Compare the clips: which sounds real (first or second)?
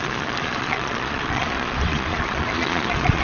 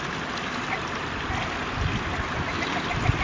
second